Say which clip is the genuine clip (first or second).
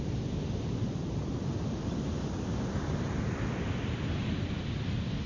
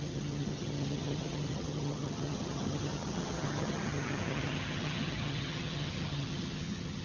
first